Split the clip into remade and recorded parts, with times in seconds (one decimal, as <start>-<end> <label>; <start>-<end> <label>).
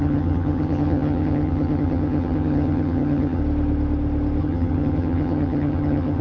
0.0-3.4 remade; 3.4-4.4 recorded; 4.4-6.2 remade